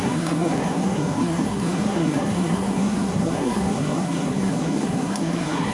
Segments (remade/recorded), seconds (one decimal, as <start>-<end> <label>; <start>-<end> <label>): 0.0-5.7 remade